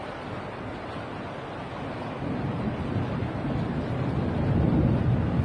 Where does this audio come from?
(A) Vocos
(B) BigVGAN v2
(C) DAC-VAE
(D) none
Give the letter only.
D